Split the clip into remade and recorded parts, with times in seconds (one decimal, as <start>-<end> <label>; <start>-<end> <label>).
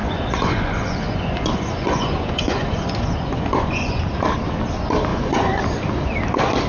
0.0-4.0 remade; 4.0-5.1 recorded; 5.1-5.6 remade; 5.6-6.7 recorded